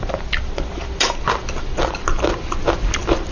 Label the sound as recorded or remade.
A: recorded